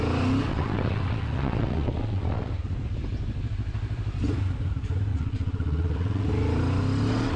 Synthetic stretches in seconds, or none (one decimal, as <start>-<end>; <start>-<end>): 0.5-2.5; 5.1-6.3